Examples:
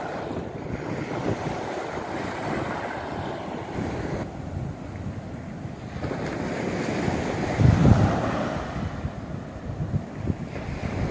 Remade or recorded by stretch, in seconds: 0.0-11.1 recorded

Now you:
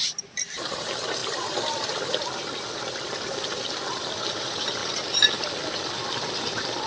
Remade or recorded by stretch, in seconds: 0.0-4.8 remade; 4.8-6.3 recorded; 6.3-6.9 remade

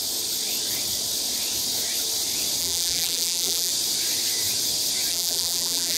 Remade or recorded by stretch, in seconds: 0.0-2.6 recorded; 2.6-3.7 remade; 3.7-5.1 recorded; 5.1-6.0 remade

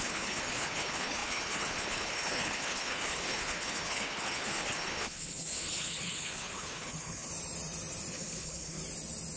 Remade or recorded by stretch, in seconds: 0.0-7.3 remade; 7.3-8.1 recorded; 8.1-8.8 remade; 8.8-9.4 recorded

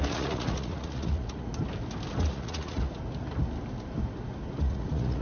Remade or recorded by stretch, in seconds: 0.0-1.5 remade; 1.5-2.2 recorded; 2.2-2.9 remade; 2.9-4.6 recorded; 4.6-5.2 remade

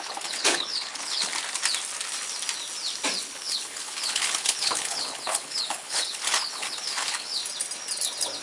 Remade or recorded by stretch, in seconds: 0.0-1.3 remade; 1.3-3.2 recorded; 3.2-7.4 remade; 7.4-8.4 recorded

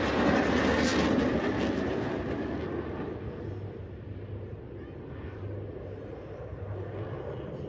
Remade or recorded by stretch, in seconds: 0.0-7.7 recorded